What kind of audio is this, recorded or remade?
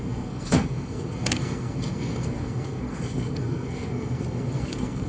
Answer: remade